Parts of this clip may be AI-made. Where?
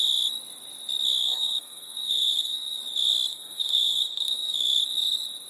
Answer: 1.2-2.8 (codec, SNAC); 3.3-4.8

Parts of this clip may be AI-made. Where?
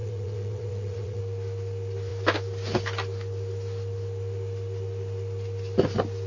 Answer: 0.0-1.2 (vocoder, WaveNeXt)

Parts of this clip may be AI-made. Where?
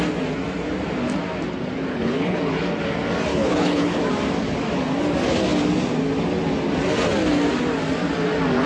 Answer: 1.9-2.4 (codec, HILCodec); 3.3-4.0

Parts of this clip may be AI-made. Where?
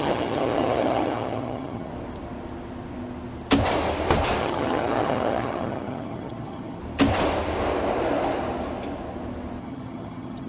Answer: 0.0-1.9 (vocoder, HiFi-GAN); 4.4-6.8; 9.6-10.5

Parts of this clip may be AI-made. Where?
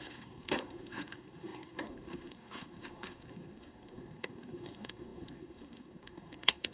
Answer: 0.0-6.7 (codec, SNAC)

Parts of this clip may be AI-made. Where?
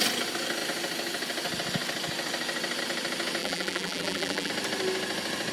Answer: 3.4-4.5 (vocoder, BigVGAN v2)